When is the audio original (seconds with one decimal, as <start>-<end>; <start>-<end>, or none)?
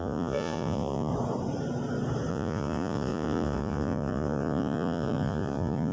1.1-2.3